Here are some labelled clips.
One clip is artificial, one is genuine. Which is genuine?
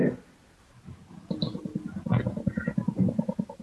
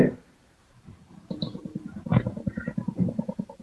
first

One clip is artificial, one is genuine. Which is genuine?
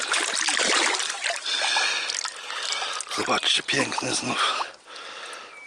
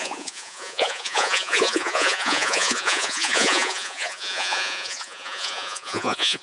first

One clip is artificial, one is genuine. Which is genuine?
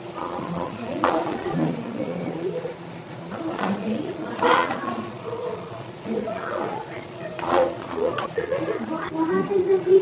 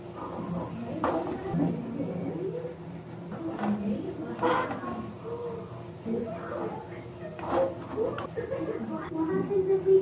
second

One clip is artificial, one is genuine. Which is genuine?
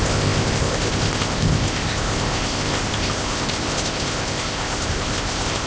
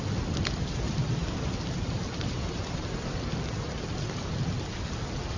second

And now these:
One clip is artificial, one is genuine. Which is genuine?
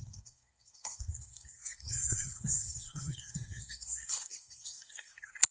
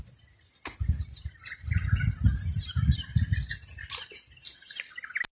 second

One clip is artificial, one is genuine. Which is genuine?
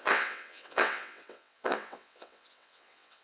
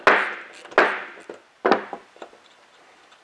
second